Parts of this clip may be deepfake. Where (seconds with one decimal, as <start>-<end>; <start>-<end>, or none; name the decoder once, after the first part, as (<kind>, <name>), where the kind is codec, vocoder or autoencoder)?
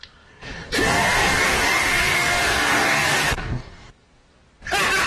0.8-3.9 (codec, DAC)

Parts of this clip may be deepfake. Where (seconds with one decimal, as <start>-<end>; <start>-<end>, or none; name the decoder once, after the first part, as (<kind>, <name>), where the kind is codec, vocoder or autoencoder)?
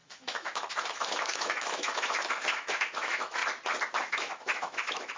0.0-3.4 (autoencoder, DAC-VAE); 4.0-5.2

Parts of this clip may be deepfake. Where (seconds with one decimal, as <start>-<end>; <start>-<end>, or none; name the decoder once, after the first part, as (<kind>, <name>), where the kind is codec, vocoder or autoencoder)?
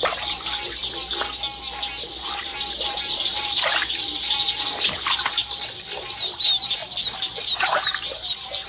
0.0-0.8 (vocoder, BigVGAN v2); 2.1-2.5; 3.0-6.8; 7.4-8.7